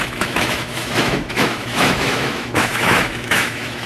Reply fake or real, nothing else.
fake